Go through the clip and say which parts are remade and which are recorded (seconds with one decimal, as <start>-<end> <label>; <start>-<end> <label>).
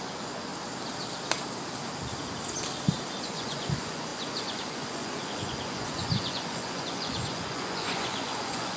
0.0-0.5 remade; 0.5-3.2 recorded; 3.2-8.8 remade